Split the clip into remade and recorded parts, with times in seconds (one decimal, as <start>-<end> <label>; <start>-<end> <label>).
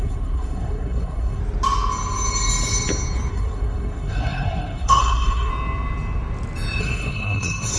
0.0-1.4 remade; 1.4-3.3 recorded; 3.3-5.5 remade; 5.5-6.8 recorded; 6.8-7.8 remade